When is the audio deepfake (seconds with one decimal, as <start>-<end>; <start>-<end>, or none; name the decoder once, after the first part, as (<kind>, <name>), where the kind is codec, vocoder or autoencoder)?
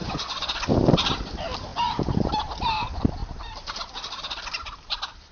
0.0-0.6 (vocoder, Vocos)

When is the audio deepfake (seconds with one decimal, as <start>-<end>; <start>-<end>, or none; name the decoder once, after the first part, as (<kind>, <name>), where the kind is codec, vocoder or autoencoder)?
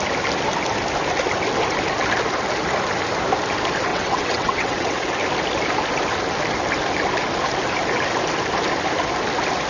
3.9-5.1 (vocoder, WaveNeXt)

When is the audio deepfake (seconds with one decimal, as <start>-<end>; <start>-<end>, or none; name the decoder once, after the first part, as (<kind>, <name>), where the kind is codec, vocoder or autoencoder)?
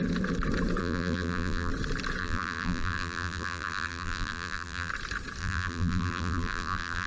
0.8-1.7 (vocoder, BigVGAN v2); 2.2-4.9; 5.4-7.1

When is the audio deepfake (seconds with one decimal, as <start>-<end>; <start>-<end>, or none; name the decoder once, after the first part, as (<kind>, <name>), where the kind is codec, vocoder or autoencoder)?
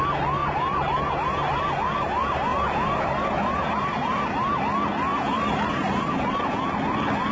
0.4-1.6 (vocoder, BigVGAN v2); 2.5-4.6; 5.1-6.5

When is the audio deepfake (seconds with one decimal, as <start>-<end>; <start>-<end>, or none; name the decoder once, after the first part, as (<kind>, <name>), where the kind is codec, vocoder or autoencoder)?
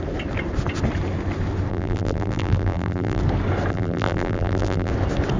1.7-3.2 (vocoder, BigVGAN v2); 3.7-4.9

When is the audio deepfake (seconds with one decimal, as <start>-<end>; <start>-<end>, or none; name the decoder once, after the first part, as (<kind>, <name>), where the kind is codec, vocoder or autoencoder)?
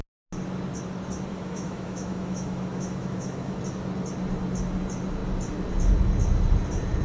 1.3-3.6 (autoencoder, DAC-VAE)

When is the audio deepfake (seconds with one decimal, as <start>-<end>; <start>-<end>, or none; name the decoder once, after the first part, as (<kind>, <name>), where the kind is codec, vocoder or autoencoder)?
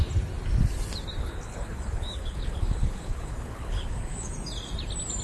1.2-4.3 (codec, HILCodec)